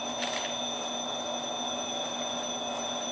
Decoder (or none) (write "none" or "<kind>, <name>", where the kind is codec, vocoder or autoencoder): none